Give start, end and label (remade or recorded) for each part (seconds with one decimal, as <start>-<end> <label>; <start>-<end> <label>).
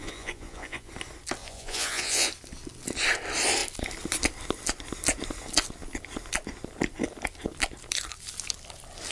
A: 0.0-0.9 remade; 0.9-1.4 recorded; 1.4-2.3 remade; 2.3-9.1 recorded